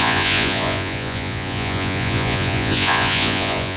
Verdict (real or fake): fake